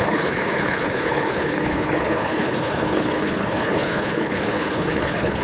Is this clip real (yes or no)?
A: no